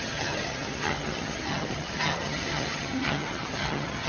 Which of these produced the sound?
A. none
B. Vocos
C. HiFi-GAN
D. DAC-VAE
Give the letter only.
C